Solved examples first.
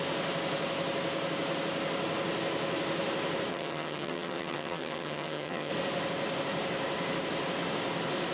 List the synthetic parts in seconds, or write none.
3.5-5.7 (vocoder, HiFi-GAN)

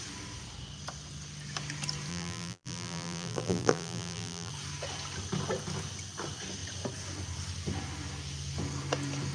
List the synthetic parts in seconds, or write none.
2.1-4.5 (vocoder, BigVGAN v2)

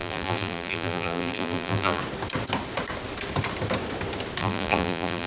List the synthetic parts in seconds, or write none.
0.0-2.0 (vocoder, BigVGAN v2); 4.4-5.3

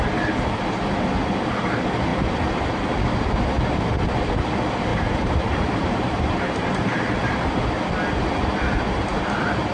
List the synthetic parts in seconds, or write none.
4.9-7.6 (vocoder, BigVGAN v2)

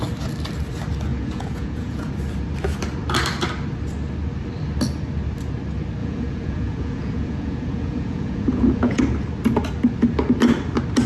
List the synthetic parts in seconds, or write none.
1.1-2.1 (vocoder, Vocos); 6.0-9.0